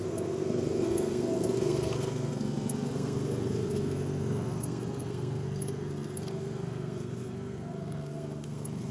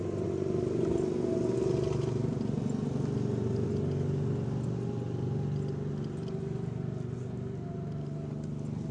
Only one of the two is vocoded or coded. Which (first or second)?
first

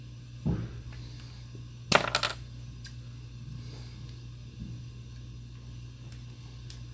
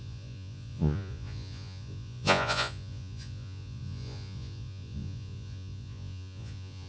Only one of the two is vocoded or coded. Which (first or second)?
second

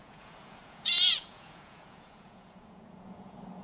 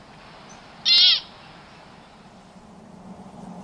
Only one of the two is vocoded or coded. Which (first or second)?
first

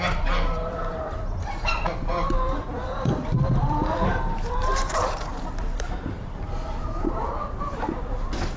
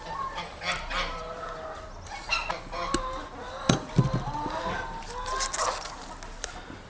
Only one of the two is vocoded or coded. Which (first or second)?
first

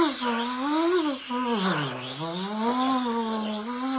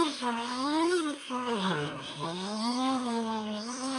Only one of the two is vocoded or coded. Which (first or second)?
second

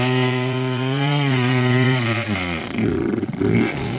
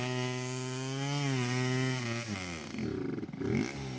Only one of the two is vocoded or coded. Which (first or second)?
first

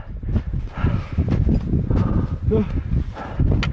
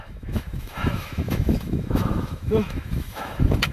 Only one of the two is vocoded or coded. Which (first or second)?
second